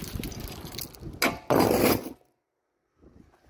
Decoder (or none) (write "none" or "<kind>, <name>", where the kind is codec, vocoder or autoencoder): none